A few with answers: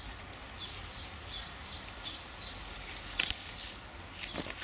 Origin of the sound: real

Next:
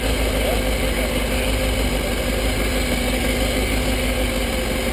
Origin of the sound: real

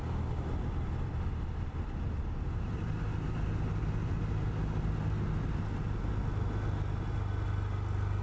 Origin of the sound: real